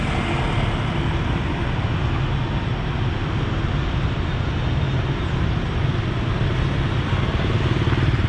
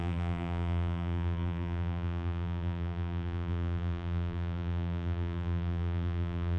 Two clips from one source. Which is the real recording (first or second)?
first